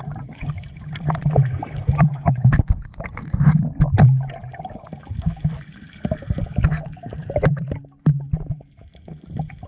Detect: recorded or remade remade